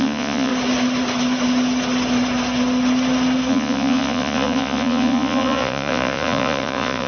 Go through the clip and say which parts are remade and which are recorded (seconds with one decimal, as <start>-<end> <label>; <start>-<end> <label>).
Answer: 0.0-0.5 remade; 0.5-3.5 recorded; 3.5-7.1 remade